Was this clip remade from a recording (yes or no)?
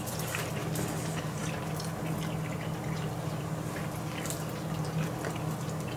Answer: no